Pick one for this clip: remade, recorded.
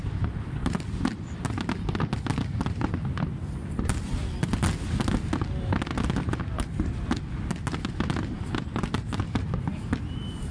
recorded